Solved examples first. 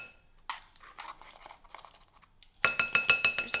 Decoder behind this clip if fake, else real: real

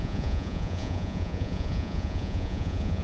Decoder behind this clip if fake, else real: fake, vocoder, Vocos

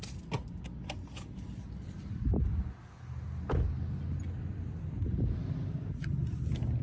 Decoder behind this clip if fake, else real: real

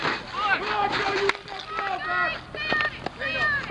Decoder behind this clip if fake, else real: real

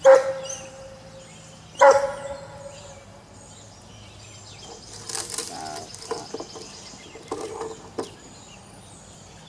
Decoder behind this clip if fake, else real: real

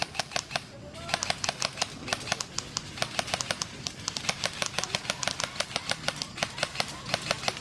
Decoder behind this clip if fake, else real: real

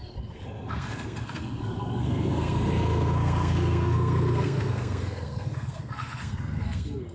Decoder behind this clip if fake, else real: fake, codec, SNAC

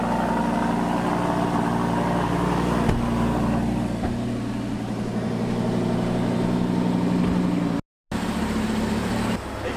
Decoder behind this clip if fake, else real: real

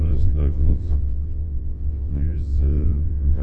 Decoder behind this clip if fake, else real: fake, vocoder, WaveNeXt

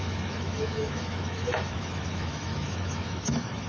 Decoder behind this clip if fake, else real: fake, autoencoder, DAC-VAE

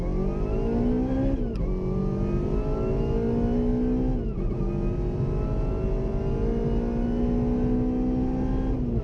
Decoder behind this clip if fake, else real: real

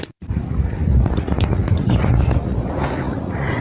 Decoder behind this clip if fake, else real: fake, vocoder, Vocos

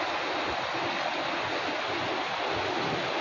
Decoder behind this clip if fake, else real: real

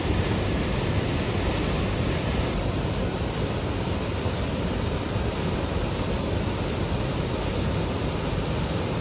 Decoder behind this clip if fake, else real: real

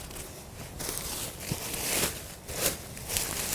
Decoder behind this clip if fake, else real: real